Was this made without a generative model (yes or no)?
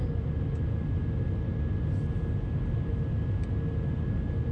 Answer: yes